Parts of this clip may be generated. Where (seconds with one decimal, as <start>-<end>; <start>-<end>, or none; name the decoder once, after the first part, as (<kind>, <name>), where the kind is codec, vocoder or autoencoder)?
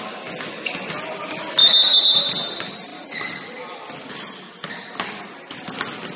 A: none